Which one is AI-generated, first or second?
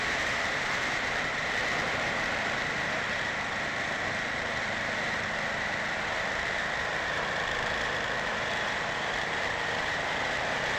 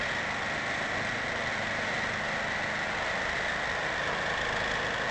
first